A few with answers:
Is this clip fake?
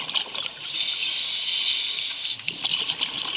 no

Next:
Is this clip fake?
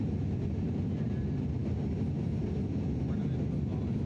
no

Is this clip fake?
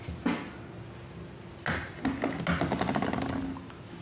no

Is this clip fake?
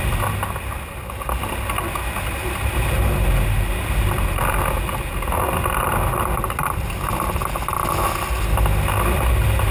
no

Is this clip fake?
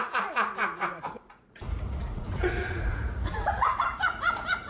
yes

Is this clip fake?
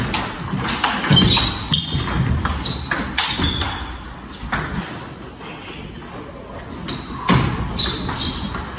no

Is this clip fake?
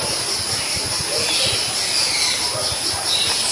no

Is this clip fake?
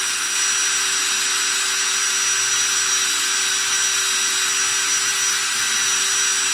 no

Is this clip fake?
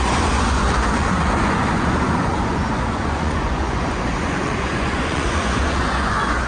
yes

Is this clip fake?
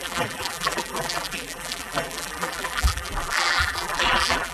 yes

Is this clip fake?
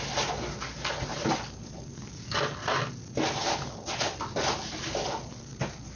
no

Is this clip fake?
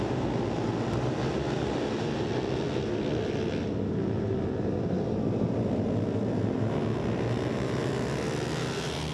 no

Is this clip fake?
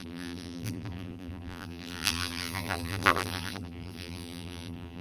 yes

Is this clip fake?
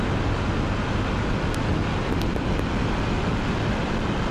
no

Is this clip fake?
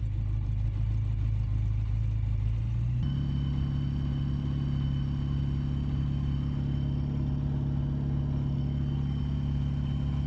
no